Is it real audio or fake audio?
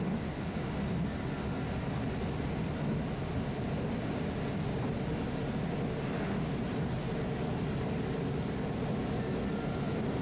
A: real